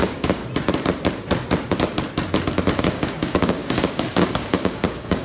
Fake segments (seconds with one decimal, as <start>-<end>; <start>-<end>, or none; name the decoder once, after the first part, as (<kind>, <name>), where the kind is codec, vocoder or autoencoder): 0.0-0.4 (codec, DAC); 2.8-5.2